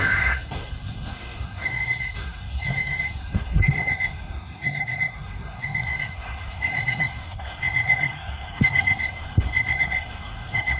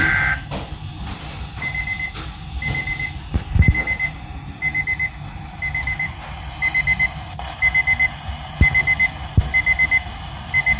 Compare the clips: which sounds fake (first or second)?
first